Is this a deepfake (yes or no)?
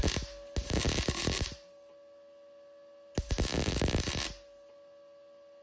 no